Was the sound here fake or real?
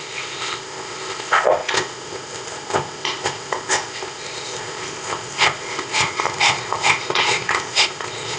fake